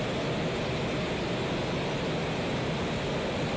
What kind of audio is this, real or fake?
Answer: real